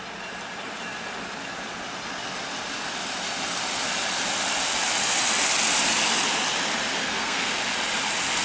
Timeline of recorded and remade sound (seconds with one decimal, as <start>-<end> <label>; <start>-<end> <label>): 0.0-7.0 recorded; 7.0-7.5 remade; 7.5-8.4 recorded